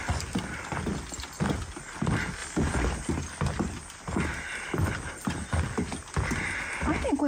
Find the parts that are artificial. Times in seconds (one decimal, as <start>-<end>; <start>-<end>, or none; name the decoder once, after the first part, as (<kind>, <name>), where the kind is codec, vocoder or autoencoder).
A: none